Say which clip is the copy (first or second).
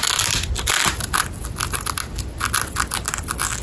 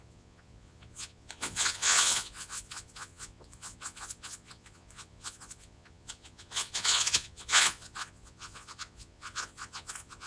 second